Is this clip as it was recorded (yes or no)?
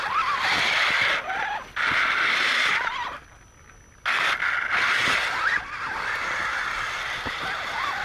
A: yes